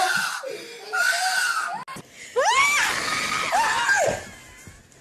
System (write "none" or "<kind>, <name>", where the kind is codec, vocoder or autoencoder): none